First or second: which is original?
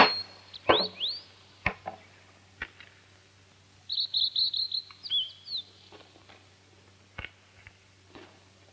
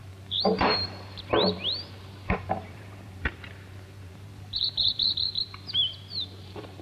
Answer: first